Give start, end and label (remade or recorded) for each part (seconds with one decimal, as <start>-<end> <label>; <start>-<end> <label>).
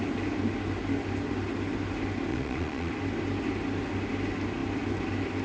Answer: 0.0-2.3 recorded; 2.3-2.9 remade; 2.9-5.4 recorded